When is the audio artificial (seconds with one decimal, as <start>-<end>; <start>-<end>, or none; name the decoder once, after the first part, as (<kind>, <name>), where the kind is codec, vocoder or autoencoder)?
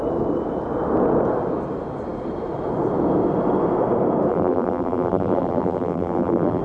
4.3-6.6 (vocoder, BigVGAN v2)